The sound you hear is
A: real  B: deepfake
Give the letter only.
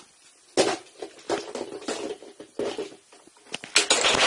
A